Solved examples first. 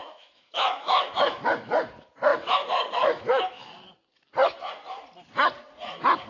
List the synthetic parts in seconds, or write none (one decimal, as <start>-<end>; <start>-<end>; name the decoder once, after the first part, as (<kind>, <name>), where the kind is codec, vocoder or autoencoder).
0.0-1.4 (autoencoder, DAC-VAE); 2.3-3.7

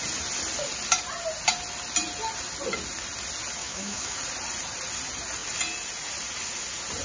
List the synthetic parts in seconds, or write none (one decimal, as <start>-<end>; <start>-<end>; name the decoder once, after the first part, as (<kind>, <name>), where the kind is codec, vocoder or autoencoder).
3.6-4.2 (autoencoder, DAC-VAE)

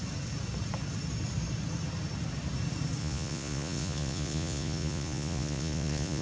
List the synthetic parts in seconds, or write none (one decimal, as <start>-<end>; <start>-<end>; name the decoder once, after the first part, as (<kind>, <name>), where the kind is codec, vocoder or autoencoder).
3.0-6.2 (vocoder, Vocos)

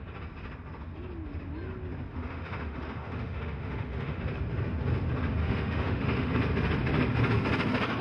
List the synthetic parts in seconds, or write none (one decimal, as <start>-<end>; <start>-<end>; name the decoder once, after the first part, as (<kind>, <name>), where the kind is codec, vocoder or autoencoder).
2.1-4.2 (autoencoder, DAC-VAE); 5.4-6.3

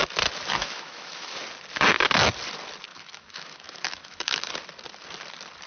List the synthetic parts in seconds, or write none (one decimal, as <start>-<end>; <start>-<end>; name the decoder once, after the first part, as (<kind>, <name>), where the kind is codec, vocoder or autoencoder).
0.6-1.4 (autoencoder, DAC-VAE); 2.9-4.5

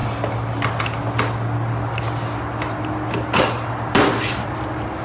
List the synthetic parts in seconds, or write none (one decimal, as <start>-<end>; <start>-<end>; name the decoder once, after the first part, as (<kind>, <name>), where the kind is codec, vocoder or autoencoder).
none

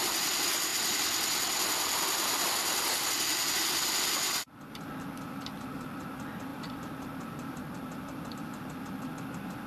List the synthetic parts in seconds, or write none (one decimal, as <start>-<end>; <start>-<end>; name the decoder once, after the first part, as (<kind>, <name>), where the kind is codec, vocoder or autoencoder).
none

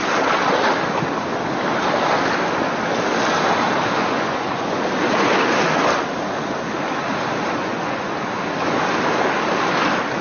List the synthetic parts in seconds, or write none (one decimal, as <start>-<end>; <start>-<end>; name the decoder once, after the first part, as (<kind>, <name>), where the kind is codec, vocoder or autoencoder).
4.0-4.8 (vocoder, Vocos); 7.6-8.1